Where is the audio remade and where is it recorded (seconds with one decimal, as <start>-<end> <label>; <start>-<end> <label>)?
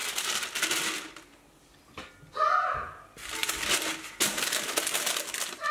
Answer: 0.0-5.7 recorded